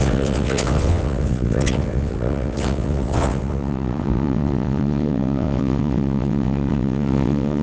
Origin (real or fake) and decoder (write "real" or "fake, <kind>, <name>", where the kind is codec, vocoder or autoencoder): fake, vocoder, WaveNeXt